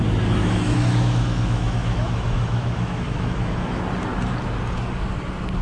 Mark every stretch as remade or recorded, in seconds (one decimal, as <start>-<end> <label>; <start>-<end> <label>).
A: 0.0-0.4 recorded; 0.4-3.8 remade; 3.8-5.6 recorded